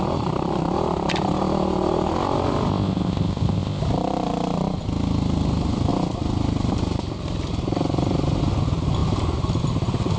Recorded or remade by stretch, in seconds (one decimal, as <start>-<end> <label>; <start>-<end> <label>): 0.0-2.7 recorded; 2.7-3.8 remade; 3.8-10.2 recorded